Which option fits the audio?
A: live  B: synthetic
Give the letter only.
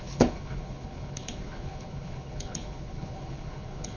B